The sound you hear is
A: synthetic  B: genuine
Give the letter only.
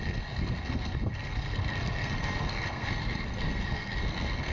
A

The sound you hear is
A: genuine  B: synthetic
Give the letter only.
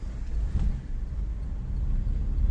A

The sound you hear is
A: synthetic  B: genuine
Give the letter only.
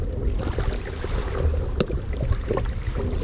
B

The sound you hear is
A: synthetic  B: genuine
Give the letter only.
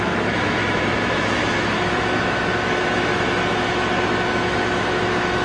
A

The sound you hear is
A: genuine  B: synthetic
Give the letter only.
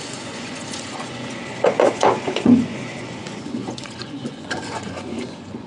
B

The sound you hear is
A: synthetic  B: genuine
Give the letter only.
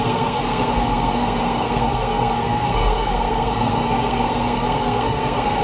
A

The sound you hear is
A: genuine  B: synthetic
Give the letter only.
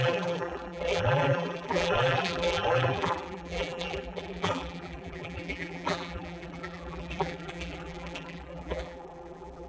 B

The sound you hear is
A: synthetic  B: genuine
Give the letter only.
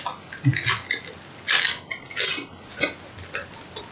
B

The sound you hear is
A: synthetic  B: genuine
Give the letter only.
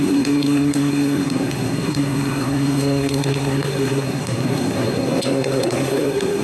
A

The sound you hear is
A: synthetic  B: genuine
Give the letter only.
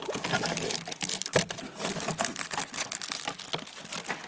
B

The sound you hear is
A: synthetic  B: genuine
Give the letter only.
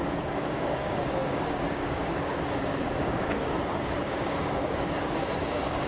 A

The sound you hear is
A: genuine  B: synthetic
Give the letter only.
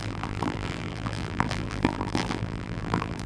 B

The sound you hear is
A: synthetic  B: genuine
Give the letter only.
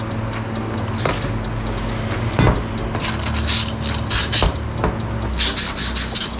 B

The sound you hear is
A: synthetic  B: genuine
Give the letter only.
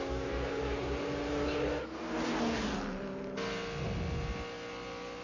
B